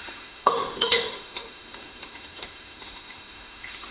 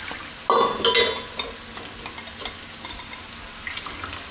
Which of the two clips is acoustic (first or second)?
second